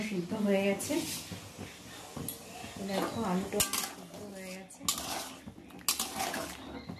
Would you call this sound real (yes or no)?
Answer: yes